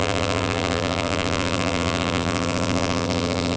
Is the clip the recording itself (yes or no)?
no